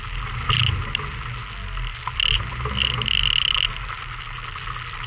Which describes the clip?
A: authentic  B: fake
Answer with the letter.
A